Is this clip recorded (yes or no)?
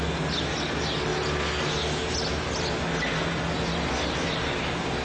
yes